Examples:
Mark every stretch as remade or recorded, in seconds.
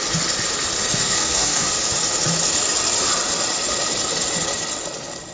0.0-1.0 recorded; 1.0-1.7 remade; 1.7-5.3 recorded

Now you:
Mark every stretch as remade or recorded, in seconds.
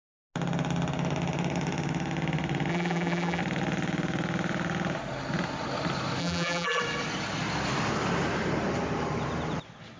0.0-2.7 recorded; 2.7-3.4 remade; 3.4-6.2 recorded; 6.2-6.8 remade; 6.8-10.0 recorded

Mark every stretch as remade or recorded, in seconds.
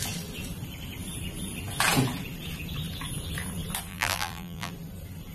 0.0-3.9 recorded; 3.9-4.7 remade; 4.7-5.3 recorded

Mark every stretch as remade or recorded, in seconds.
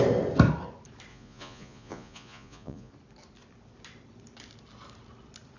0.0-1.1 recorded; 1.1-2.9 remade; 2.9-5.6 recorded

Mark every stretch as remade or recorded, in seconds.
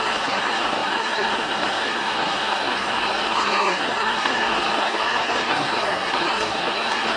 0.0-7.2 remade